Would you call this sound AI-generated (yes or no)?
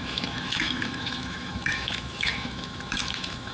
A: yes